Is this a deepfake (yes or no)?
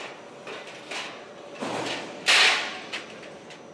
yes